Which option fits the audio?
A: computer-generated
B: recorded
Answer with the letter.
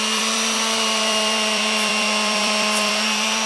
A